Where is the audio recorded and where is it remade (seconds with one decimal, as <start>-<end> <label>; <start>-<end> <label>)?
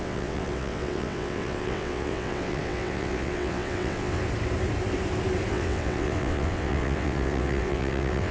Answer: 0.0-4.2 remade; 4.2-5.5 recorded; 5.5-8.3 remade